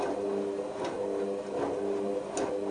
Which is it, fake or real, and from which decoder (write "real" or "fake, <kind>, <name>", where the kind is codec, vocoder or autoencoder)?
real